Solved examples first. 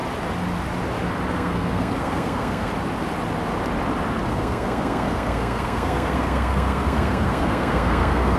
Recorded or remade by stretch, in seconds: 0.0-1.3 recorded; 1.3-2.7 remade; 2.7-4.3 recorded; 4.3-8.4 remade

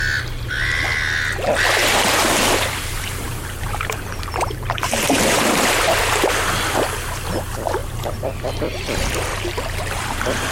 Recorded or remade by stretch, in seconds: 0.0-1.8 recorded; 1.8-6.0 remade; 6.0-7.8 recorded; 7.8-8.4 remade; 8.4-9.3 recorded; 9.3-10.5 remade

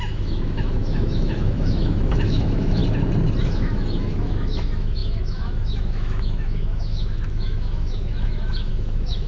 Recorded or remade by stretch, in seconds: 0.0-2.8 remade; 2.8-3.4 recorded; 3.4-9.3 remade

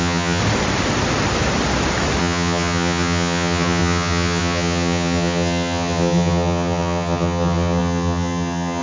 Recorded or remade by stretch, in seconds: 0.0-0.4 remade; 0.4-2.2 recorded; 2.2-8.8 remade